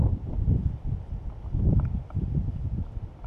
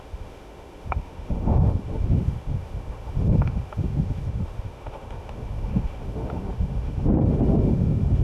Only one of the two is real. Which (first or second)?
first